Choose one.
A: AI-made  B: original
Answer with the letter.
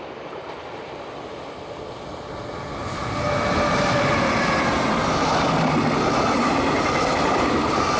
B